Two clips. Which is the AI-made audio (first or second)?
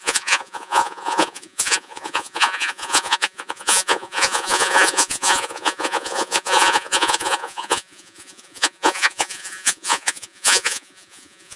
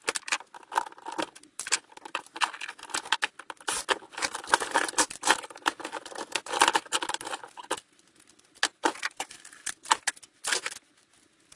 first